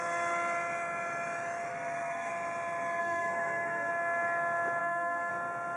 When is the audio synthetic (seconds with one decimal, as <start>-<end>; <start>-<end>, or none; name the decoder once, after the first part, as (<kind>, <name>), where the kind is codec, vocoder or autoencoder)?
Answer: 1.7-2.3 (codec, SNAC); 3.0-3.9; 4.8-5.3